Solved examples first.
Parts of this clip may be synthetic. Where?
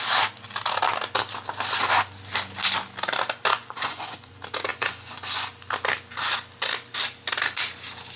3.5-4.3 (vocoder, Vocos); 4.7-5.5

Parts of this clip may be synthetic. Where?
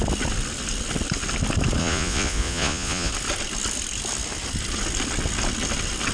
1.8-3.1 (vocoder, Vocos)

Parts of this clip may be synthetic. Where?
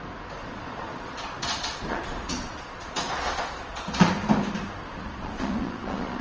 0.4-4.1 (vocoder, Vocos); 4.9-6.2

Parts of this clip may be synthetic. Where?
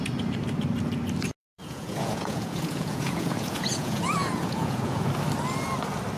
1.4-5.1 (vocoder, Vocos)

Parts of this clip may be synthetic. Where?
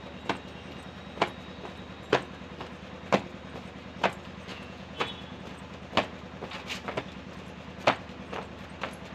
4.5-5.4 (vocoder, Vocos)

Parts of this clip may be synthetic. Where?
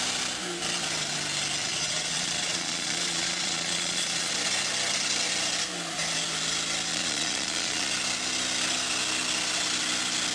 1.6-4.3 (vocoder, Vocos); 6.9-7.9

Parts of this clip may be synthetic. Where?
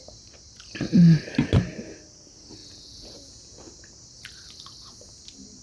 2.6-3.6 (vocoder, Vocos)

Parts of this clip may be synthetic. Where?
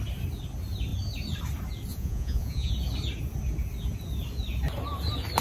1.9-2.7 (vocoder, Vocos)